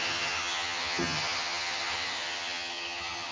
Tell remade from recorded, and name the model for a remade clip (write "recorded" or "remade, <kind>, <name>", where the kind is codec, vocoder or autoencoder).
remade, vocoder, HiFi-GAN